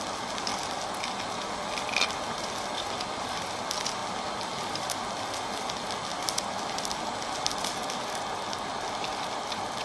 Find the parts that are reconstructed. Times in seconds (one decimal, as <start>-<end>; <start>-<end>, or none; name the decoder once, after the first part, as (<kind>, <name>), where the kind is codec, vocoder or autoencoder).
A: none